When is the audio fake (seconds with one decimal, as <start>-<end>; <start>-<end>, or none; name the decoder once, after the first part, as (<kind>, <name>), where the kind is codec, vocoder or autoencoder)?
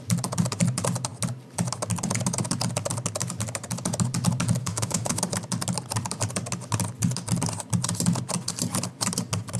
4.6-5.2 (autoencoder, DAC-VAE)